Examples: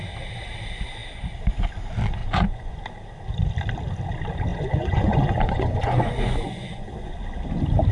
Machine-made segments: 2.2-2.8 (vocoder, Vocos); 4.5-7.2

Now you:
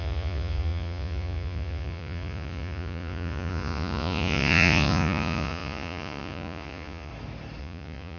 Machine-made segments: 0.0-7.1 (vocoder, Vocos); 7.6-8.2

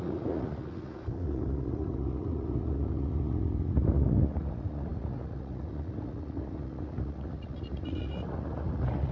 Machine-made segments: 0.0-9.1 (vocoder, Vocos)

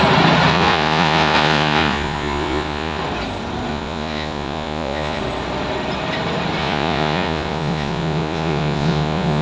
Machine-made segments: 0.5-3.0 (vocoder, Vocos); 3.7-5.2; 6.6-9.4

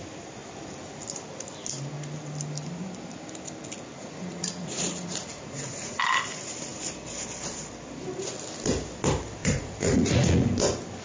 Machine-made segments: 4.0-6.0 (vocoder, Vocos); 9.4-10.5

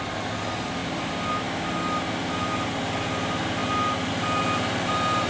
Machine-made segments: none

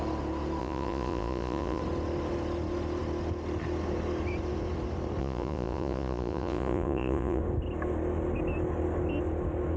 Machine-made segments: 0.6-1.8 (vocoder, Vocos); 5.2-7.4

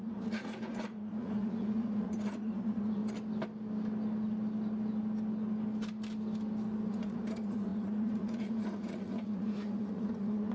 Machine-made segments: 0.0-3.0 (vocoder, Vocos); 6.9-10.5